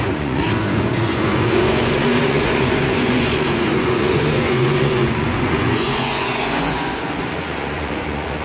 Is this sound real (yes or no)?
no